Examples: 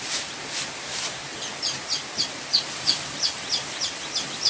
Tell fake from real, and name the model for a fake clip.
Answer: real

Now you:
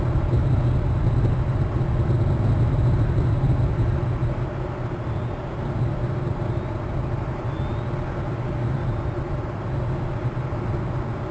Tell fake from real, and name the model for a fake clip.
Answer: real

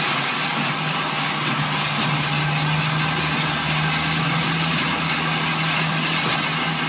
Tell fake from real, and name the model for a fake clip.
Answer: real